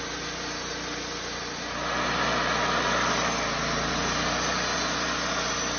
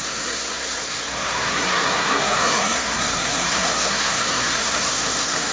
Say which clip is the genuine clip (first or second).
first